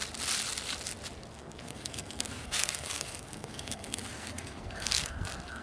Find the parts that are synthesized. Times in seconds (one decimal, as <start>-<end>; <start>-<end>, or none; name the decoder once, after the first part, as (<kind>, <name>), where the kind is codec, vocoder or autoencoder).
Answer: 1.3-5.6 (codec, SNAC)